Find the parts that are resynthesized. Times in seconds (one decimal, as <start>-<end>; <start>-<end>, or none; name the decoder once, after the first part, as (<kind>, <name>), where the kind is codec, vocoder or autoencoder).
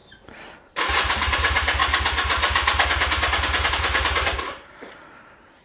0.8-1.8 (vocoder, BigVGAN v2); 3.7-5.6